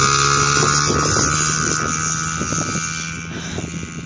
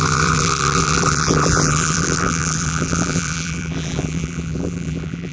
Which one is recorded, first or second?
first